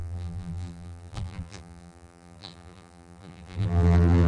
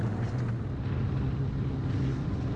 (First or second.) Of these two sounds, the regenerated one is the first